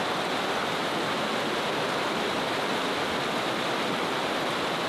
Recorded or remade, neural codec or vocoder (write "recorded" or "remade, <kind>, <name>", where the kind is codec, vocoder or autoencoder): recorded